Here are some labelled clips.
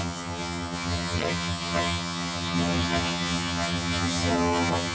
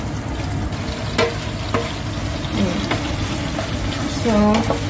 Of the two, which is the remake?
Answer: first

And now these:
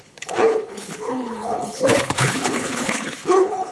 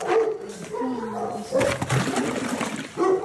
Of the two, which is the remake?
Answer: first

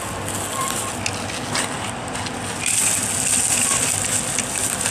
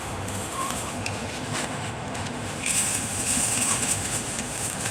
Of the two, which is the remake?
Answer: second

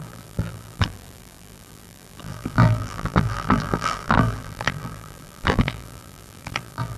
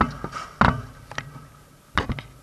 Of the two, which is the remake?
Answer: first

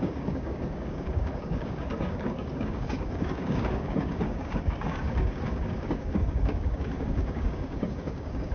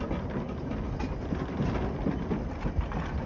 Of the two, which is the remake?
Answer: first